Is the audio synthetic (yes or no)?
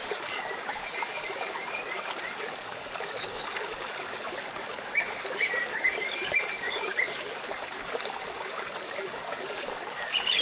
yes